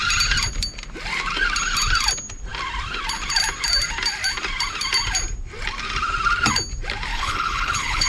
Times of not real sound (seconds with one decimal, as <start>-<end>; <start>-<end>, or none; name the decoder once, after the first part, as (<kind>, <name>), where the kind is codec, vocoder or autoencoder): 7.1-8.1 (codec, HILCodec)